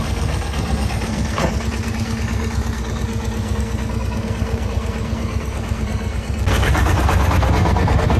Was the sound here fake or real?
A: fake